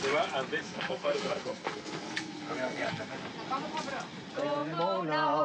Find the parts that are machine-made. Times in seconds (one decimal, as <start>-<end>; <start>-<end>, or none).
0.6-3.1